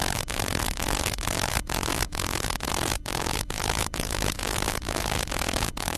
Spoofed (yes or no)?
yes